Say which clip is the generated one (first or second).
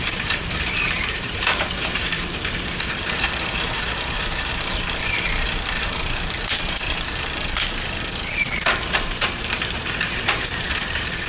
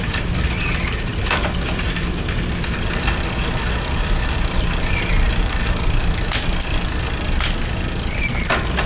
first